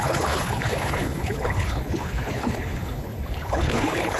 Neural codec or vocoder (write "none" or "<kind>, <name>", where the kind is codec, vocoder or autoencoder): codec, HILCodec